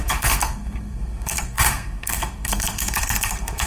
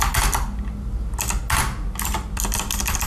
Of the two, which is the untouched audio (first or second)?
second